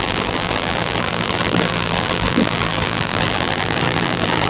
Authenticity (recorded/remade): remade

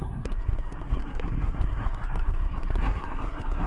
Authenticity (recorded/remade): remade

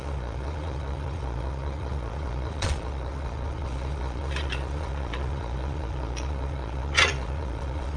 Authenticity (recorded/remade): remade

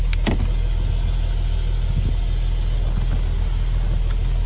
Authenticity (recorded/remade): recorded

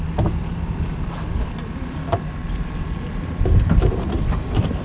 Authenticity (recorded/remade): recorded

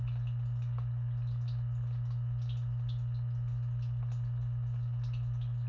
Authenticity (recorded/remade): recorded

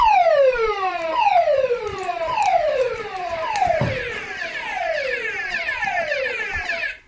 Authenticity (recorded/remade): remade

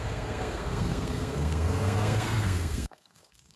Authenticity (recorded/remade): remade